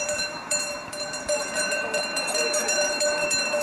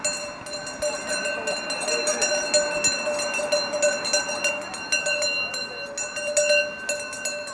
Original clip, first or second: second